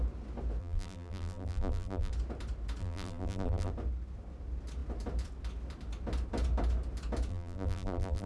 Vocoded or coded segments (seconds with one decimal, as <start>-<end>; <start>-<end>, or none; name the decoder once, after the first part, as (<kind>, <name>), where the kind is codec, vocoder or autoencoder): 0.6-2.1 (vocoder, BigVGAN v2); 2.8-3.7; 7.3-8.3